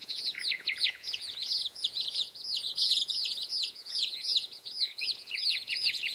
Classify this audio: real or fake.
fake